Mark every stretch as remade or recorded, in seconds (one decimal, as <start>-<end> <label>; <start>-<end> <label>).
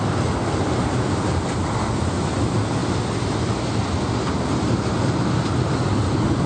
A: 0.0-6.5 recorded